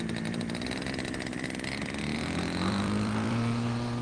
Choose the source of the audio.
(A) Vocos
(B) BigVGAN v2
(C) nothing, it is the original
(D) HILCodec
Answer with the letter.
B